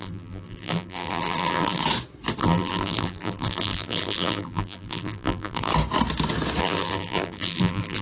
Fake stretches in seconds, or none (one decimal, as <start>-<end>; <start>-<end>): 0.0-1.8; 2.4-5.7; 6.6-8.0